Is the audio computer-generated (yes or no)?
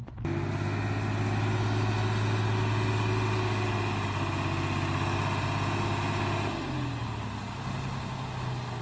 no